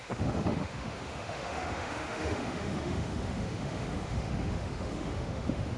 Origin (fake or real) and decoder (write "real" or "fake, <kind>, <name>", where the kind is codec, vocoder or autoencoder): fake, autoencoder, DAC-VAE